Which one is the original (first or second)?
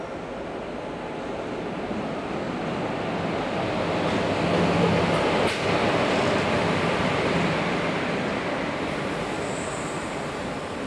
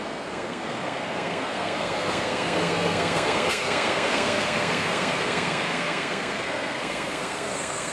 first